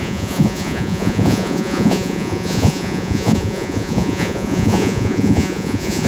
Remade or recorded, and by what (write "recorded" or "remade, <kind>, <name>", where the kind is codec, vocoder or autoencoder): remade, vocoder, Vocos